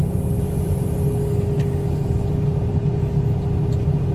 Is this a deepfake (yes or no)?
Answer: no